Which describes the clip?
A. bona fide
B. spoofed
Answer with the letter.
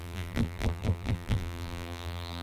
B